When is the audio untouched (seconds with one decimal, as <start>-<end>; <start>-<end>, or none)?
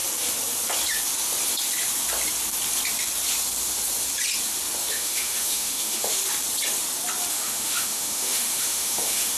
0.0-4.9; 6.2-7.3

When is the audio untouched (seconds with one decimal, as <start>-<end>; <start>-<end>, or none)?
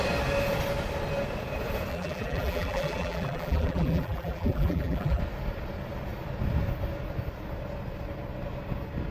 0.0-1.9; 5.2-9.1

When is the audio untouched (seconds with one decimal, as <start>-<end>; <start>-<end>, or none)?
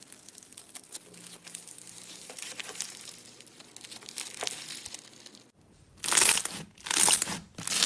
0.0-1.4; 3.7-7.9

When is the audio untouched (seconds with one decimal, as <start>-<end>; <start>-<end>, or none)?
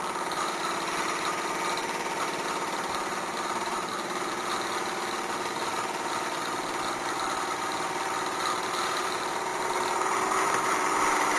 5.7-6.9